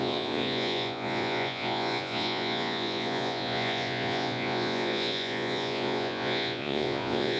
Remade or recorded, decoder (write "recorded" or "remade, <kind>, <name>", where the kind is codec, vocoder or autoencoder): remade, vocoder, Vocos